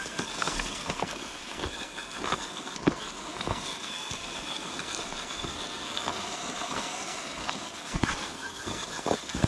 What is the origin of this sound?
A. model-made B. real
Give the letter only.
A